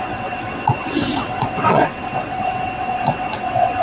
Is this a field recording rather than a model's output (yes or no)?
no